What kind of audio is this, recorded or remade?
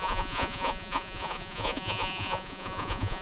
remade